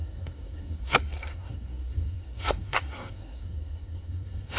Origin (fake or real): fake